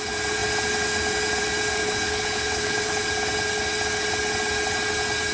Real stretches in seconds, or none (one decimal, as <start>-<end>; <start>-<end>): 0.0-1.8; 3.1-5.3